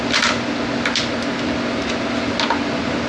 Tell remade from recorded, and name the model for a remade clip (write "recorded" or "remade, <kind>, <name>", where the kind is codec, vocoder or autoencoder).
recorded